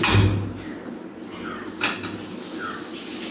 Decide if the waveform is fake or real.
real